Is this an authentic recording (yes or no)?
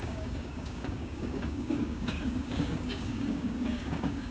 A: no